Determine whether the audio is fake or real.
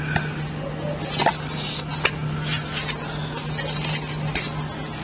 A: real